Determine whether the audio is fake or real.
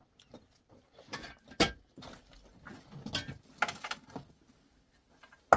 real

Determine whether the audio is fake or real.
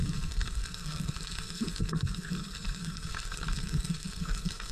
fake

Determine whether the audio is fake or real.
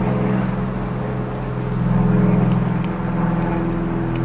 real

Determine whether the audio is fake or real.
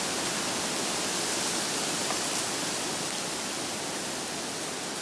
real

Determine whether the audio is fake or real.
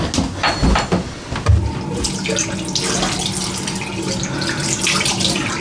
real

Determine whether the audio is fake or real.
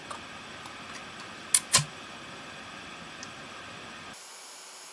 real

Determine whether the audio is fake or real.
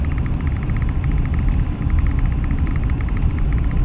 fake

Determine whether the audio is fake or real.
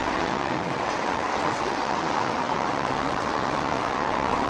fake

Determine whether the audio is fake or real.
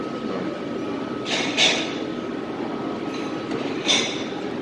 real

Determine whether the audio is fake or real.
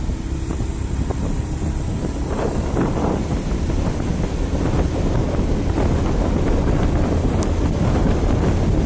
real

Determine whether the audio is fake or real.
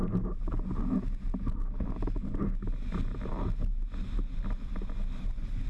real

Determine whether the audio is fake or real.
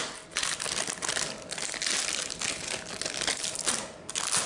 real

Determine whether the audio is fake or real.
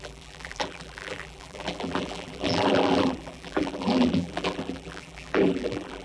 fake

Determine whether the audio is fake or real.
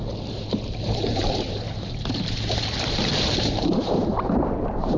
fake